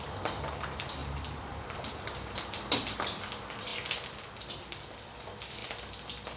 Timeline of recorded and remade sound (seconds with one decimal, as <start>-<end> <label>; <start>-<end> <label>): 0.0-1.0 recorded; 1.0-3.2 remade; 3.2-6.4 recorded